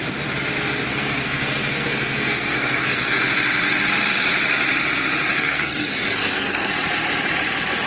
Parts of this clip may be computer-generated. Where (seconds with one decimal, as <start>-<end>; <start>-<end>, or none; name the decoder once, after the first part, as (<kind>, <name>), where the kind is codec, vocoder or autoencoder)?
0.9-3.3 (codec, SNAC); 5.3-6.7